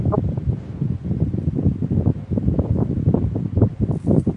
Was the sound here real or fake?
real